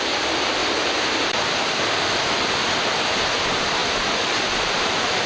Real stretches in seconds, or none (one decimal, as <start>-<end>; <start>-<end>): 2.6-3.2; 3.8-4.4